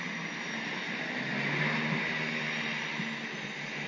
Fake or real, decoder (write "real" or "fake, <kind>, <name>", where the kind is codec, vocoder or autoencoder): real